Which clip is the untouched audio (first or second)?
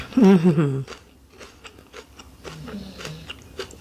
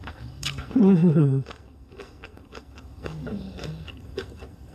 first